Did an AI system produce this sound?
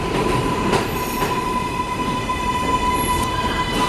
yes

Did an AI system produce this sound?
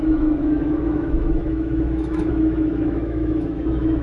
yes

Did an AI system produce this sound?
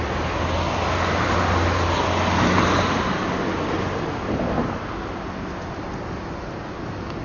no